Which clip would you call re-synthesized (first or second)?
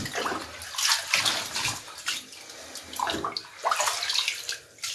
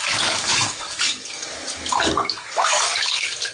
second